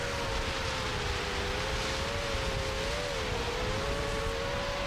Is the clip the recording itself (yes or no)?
yes